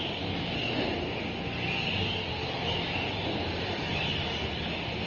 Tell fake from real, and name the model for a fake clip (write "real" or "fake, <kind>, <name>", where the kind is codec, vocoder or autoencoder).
real